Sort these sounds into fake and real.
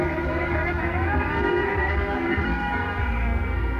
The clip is fake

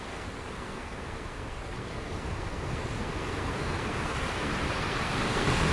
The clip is fake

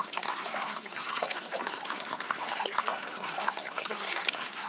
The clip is fake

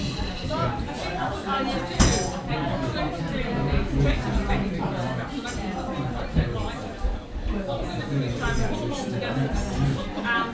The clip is real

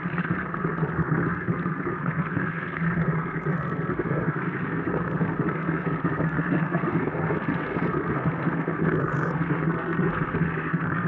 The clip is fake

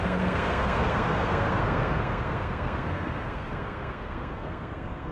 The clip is fake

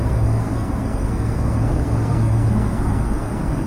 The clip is fake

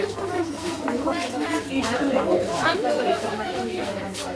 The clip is fake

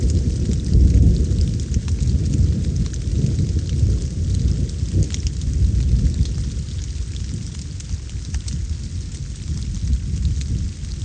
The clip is real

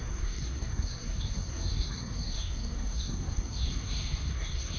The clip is fake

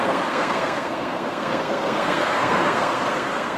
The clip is fake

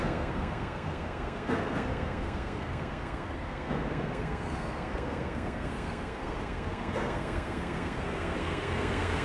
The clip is fake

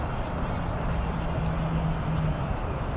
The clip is real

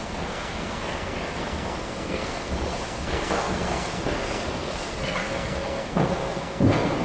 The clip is fake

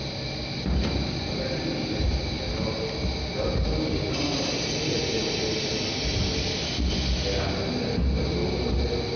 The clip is real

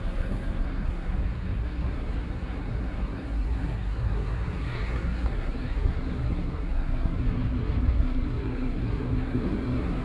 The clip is fake